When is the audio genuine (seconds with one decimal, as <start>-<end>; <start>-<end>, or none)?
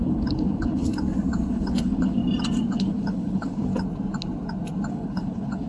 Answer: 0.9-1.5; 2.2-2.7; 3.7-4.9